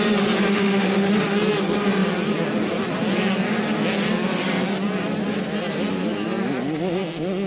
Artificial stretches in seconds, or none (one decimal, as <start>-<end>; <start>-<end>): 0.5-1.1